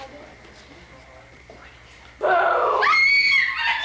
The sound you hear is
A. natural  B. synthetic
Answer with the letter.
A